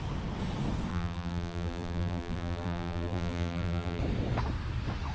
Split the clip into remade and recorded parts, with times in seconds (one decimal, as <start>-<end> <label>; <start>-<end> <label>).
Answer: 0.0-0.9 recorded; 0.9-4.0 remade; 4.0-5.1 recorded